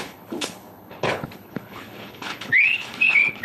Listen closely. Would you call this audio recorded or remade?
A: remade